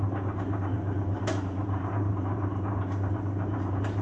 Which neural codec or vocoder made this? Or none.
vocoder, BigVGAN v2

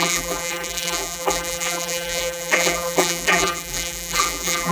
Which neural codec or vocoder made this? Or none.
vocoder, BigVGAN v2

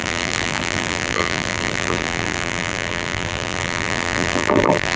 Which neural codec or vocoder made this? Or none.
vocoder, BigVGAN v2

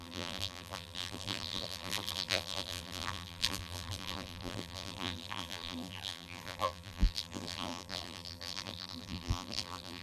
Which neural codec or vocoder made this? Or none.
vocoder, BigVGAN v2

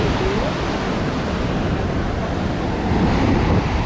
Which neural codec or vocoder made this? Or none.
none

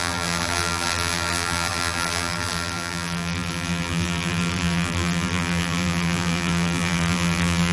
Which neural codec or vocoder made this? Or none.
vocoder, BigVGAN v2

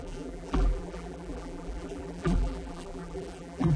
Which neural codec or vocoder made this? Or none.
vocoder, BigVGAN v2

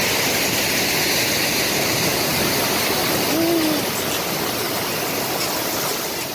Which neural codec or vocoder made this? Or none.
none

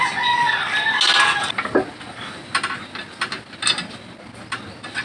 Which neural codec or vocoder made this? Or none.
none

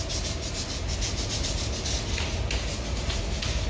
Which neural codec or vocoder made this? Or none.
none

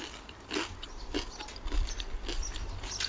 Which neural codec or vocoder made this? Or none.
none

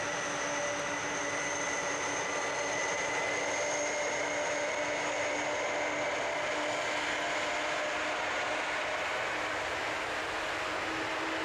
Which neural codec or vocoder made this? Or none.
none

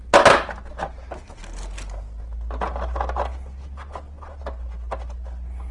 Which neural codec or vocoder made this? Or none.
none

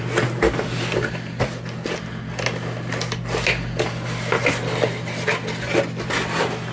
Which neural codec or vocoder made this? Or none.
none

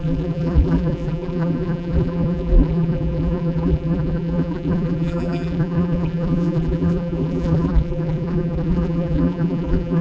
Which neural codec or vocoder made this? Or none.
vocoder, BigVGAN v2